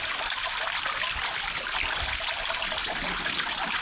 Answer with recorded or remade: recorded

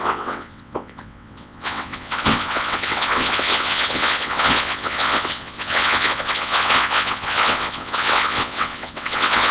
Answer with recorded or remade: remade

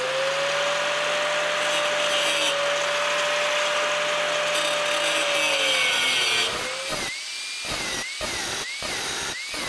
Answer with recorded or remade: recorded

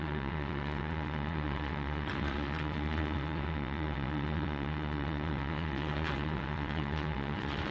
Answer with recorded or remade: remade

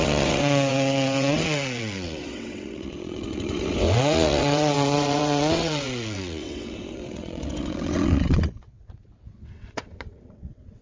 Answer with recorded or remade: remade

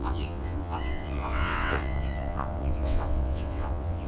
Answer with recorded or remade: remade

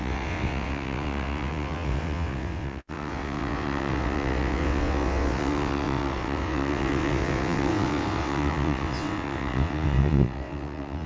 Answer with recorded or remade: remade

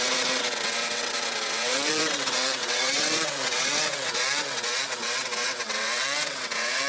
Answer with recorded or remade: remade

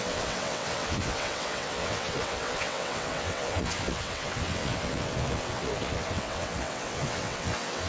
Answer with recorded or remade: remade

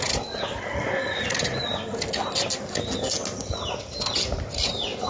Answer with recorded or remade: recorded